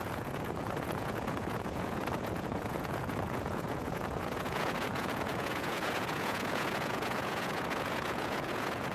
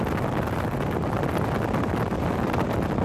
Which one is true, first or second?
second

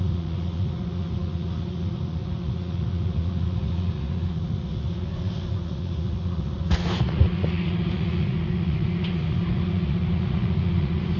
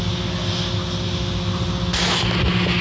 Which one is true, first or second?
second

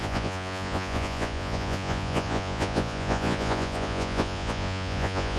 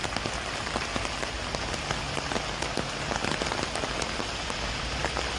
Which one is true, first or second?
second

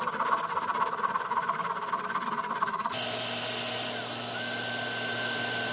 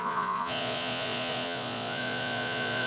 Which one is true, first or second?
first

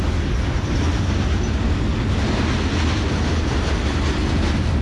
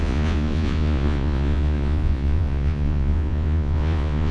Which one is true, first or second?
first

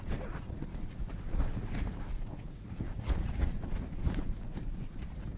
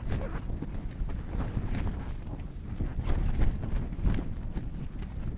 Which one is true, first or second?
second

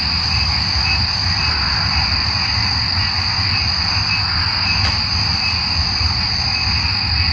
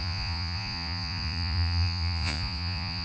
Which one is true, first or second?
first